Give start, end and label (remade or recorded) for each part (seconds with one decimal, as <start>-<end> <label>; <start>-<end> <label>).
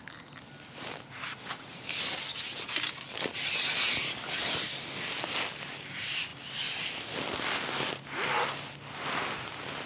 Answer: 0.0-9.9 recorded